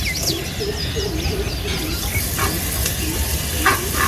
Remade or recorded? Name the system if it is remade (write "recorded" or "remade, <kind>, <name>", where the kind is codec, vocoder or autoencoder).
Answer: recorded